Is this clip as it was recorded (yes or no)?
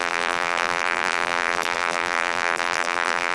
no